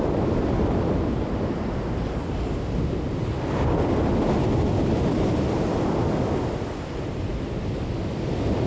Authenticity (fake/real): real